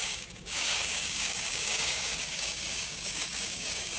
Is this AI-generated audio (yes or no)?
yes